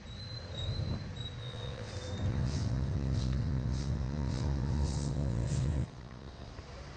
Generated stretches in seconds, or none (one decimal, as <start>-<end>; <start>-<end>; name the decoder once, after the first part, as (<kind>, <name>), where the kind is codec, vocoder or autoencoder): 1.4-1.9 (vocoder, WaveNeXt); 2.3-6.5